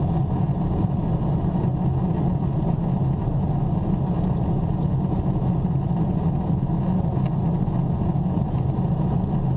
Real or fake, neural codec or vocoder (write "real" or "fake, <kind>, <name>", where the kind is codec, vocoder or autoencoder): real